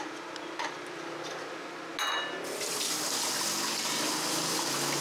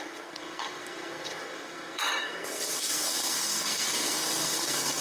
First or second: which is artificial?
second